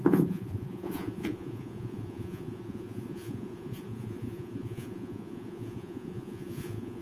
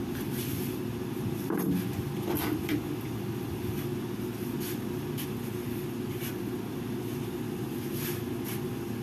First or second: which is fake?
first